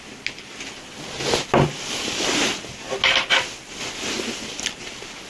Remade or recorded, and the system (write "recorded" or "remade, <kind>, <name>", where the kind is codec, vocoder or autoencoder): recorded